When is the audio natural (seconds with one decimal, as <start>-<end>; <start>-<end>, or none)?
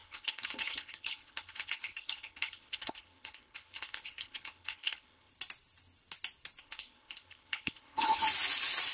5.3-6.6; 8.2-8.9